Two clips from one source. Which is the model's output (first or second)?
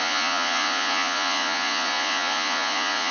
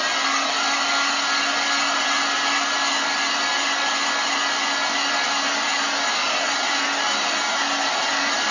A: first